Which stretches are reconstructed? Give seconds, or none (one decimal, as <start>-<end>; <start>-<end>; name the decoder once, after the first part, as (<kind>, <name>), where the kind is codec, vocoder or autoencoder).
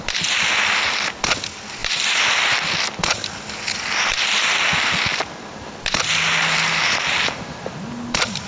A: none